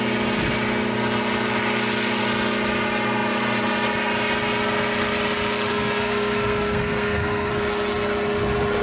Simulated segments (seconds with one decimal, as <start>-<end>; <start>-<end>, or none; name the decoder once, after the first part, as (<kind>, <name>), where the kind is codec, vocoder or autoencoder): 5.7-7.5 (codec, SNAC)